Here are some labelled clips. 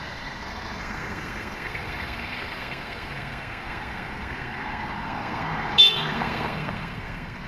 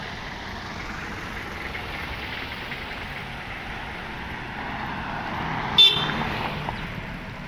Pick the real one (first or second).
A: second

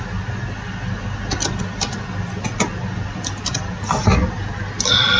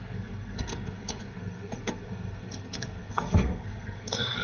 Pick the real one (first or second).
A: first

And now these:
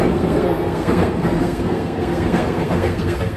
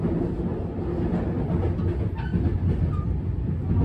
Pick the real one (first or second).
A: second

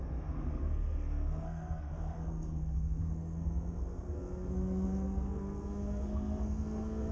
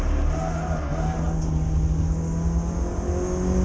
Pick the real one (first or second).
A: second